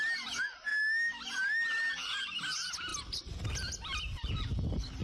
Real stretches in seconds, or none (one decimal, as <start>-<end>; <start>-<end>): 0.0-5.0